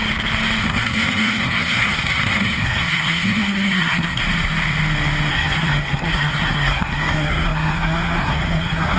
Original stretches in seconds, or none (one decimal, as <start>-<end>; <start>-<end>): 0.0-0.6; 4.2-5.3